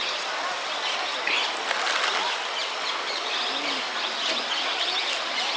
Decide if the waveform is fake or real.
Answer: fake